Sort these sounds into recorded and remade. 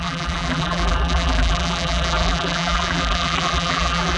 remade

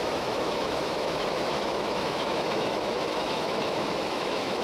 remade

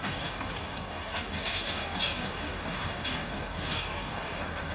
remade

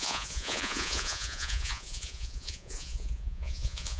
remade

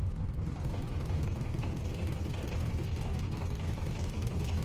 remade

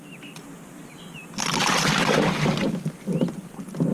remade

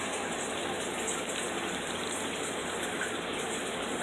recorded